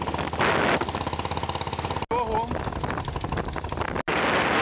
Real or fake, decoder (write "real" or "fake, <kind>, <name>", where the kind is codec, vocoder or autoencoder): real